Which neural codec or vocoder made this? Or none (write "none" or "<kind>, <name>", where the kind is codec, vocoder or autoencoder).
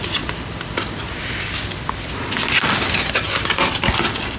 none